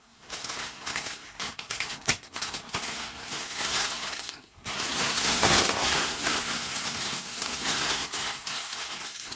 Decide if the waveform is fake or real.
fake